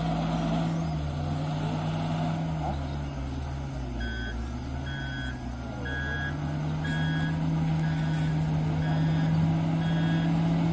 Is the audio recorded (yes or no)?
yes